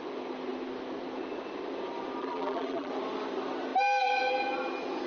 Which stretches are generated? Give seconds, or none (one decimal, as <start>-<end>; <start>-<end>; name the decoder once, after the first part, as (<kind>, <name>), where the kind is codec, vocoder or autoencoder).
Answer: 2.2-2.9 (vocoder, BigVGAN v2)

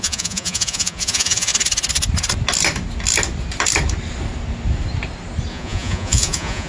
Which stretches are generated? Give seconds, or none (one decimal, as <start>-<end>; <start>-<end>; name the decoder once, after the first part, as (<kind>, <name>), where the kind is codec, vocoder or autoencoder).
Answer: 0.0-1.5 (vocoder, Vocos); 5.5-6.7

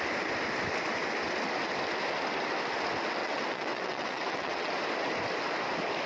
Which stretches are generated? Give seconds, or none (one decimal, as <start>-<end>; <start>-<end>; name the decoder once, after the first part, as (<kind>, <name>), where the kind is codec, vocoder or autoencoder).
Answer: 3.2-4.7 (vocoder, WaveNeXt)

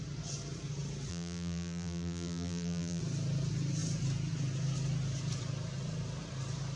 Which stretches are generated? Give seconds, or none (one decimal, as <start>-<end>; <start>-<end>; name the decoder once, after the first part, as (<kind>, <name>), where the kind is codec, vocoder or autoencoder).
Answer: 1.1-3.0 (vocoder, BigVGAN v2)